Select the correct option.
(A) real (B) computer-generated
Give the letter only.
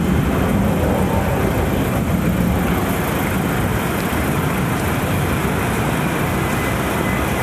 A